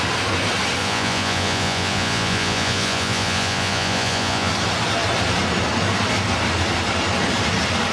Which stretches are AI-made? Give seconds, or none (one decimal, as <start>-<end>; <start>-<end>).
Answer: 0.8-4.5